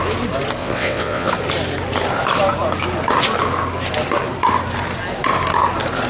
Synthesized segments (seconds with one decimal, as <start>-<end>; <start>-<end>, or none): 0.6-1.3